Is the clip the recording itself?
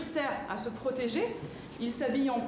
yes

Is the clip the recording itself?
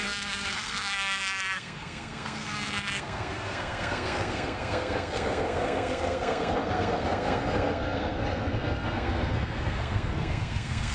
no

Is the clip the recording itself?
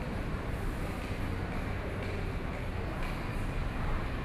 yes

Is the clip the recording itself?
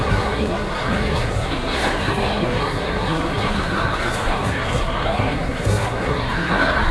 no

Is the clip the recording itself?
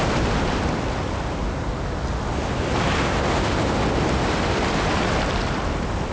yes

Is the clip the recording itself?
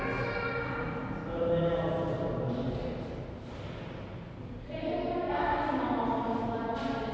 yes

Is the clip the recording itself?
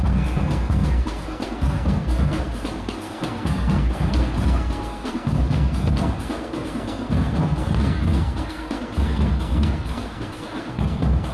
no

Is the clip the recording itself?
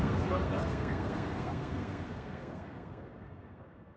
no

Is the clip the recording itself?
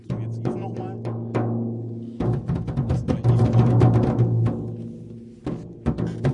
yes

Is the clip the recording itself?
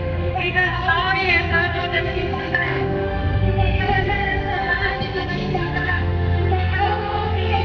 no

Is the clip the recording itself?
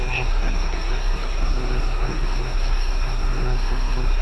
no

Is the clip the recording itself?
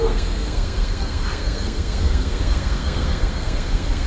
no